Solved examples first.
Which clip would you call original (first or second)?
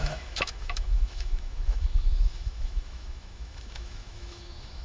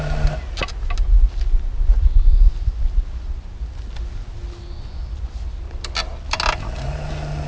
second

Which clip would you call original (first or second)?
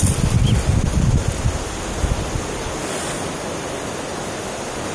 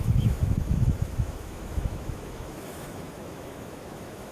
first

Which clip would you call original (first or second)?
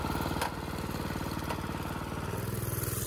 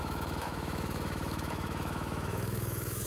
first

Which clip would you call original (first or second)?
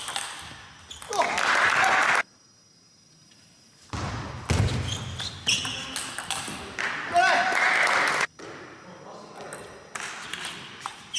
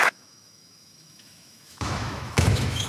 first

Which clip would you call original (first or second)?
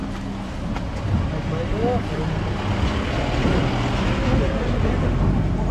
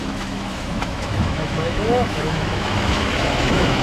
first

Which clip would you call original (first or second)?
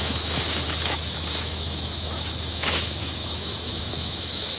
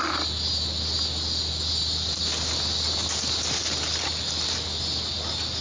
second